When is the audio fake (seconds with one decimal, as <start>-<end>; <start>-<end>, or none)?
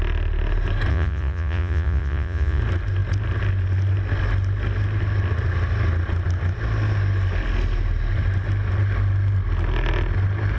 0.9-2.6